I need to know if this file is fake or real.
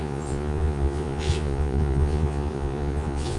fake